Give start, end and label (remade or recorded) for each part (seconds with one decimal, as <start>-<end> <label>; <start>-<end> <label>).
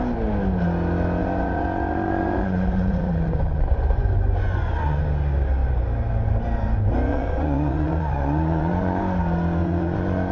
0.0-1.2 recorded; 1.2-5.0 remade; 5.0-7.1 recorded; 7.1-9.0 remade; 9.0-9.6 recorded; 9.6-10.3 remade